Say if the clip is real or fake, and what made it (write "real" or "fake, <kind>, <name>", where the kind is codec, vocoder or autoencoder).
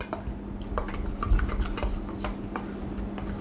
real